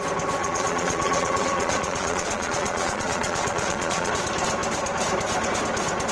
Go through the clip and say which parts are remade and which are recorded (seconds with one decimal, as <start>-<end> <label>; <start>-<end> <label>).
0.0-0.4 recorded; 0.4-4.1 remade; 4.1-6.1 recorded